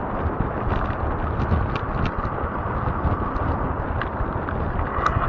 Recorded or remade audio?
recorded